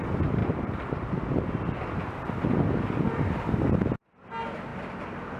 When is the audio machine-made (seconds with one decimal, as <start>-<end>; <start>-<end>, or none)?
0.4-3.6; 4.7-5.4